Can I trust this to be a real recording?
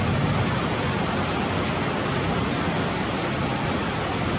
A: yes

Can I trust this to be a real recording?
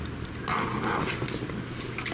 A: yes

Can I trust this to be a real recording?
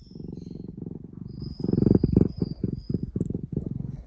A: yes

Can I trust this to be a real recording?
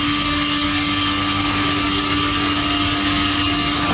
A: no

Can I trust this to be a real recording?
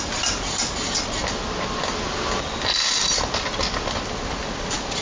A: yes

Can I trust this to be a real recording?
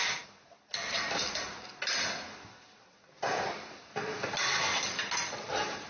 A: yes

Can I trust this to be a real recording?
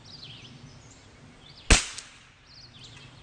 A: yes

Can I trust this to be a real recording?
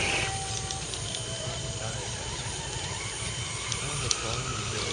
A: yes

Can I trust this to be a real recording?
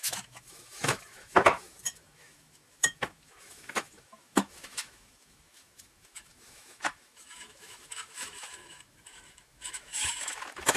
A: no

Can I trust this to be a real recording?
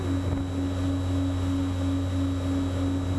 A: yes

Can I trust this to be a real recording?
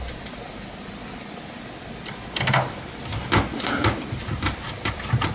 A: yes